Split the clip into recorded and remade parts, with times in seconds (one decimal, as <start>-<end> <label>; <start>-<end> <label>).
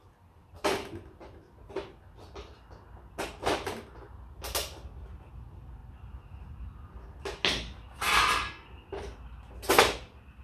0.0-10.4 recorded